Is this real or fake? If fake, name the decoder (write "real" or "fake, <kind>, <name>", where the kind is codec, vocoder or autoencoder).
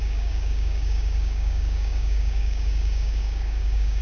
fake, codec, DAC